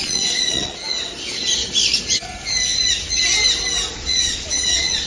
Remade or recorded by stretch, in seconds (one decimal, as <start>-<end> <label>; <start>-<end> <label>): 0.0-0.8 remade; 0.8-3.9 recorded; 3.9-5.1 remade